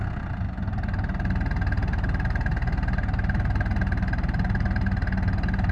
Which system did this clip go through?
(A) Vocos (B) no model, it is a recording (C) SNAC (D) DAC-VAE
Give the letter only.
B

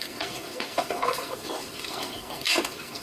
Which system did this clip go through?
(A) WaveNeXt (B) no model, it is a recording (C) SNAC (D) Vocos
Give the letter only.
C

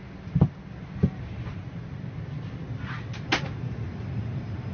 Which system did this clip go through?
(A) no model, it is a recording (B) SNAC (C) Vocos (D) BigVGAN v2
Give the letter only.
A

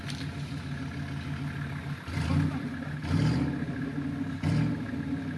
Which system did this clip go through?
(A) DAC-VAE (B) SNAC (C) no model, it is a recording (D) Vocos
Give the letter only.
C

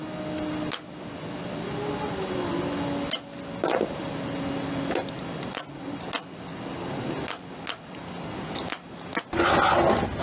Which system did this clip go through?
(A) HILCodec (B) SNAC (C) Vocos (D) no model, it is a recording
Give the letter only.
D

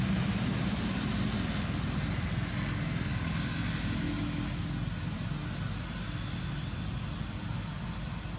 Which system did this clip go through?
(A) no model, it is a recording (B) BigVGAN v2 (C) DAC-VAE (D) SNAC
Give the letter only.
A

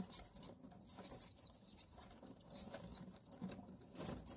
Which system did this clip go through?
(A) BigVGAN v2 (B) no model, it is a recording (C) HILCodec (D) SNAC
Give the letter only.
B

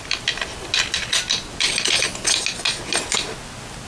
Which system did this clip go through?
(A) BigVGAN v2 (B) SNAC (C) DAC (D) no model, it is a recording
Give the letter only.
D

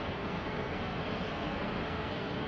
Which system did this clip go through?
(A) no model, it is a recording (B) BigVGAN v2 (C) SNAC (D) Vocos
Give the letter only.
C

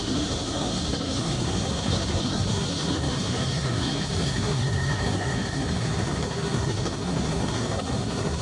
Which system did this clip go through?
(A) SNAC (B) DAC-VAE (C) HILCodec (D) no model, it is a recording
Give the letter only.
A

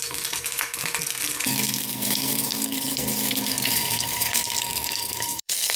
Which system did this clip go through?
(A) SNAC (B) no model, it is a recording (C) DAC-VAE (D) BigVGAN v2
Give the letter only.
A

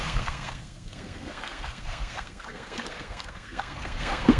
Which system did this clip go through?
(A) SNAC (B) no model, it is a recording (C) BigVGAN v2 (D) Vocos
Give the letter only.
A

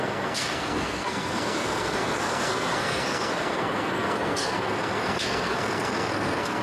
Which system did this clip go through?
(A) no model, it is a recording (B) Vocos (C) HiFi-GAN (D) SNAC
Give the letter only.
D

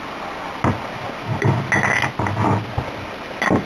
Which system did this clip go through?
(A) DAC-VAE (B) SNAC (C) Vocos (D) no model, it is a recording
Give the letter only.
D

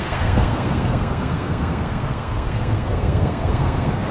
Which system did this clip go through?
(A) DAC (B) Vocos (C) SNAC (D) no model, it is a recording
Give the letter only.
C